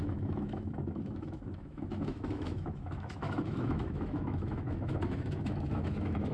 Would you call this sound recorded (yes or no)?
no